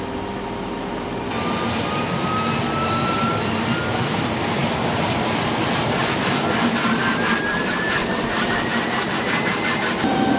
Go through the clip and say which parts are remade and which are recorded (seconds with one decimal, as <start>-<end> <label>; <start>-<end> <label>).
0.0-8.7 remade; 8.7-9.9 recorded; 9.9-10.4 remade